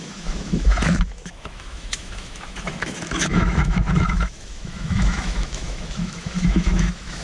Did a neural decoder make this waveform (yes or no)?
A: yes